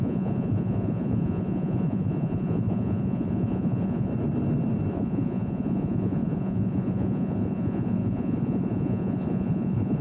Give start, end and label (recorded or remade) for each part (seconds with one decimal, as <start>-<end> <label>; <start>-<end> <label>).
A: 0.0-4.1 remade; 4.1-4.9 recorded; 4.9-10.0 remade